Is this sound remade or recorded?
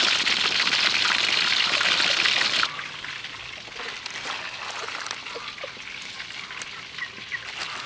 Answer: recorded